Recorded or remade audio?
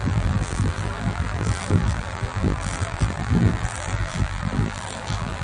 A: remade